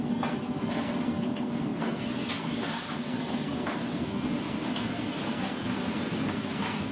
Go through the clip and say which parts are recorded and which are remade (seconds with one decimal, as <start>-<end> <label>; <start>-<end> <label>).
0.0-6.9 remade